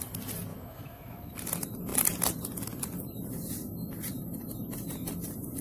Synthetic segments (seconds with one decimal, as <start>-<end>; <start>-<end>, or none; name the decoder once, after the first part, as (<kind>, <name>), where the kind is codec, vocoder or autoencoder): 0.5-1.3 (autoencoder, DAC-VAE)